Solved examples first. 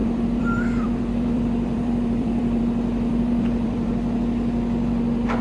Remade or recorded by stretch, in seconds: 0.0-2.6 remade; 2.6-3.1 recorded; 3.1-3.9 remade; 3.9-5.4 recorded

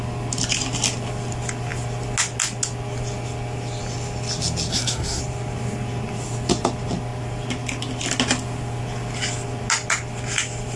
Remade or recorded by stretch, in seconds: 0.0-4.7 recorded; 4.7-5.2 remade; 5.2-10.8 recorded

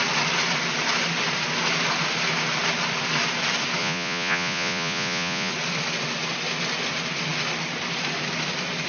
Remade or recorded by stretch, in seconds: 0.0-3.8 recorded; 3.8-5.5 remade; 5.5-8.9 recorded